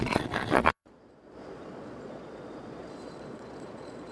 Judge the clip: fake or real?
fake